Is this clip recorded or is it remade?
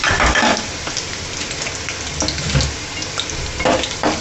recorded